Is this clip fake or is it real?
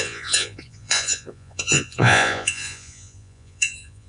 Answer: fake